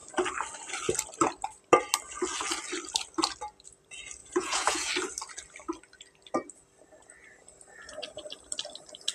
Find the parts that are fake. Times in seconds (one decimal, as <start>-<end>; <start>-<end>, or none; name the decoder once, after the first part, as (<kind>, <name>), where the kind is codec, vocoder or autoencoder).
4.2-4.9 (vocoder, Vocos)